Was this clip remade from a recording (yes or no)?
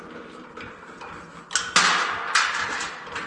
no